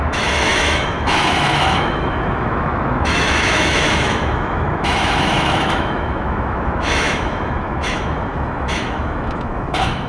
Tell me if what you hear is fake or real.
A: fake